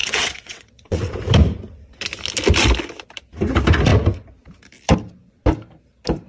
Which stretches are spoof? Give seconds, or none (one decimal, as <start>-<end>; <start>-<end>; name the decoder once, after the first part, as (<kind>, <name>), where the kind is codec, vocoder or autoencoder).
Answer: 0.0-1.1 (vocoder, WaveNeXt)